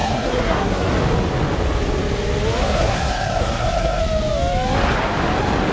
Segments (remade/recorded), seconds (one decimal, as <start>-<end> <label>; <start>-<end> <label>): 0.0-0.9 remade; 0.9-2.6 recorded; 2.6-4.0 remade; 4.0-5.7 recorded